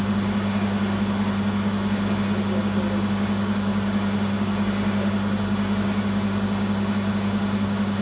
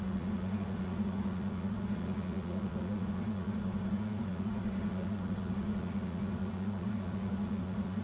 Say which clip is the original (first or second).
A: first